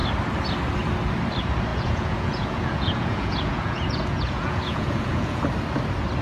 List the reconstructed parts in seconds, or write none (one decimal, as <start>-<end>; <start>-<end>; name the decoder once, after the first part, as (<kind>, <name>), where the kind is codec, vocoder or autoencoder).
1.7-5.4 (vocoder, Vocos)